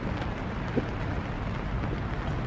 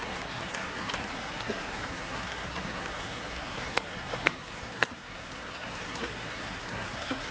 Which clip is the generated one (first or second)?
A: second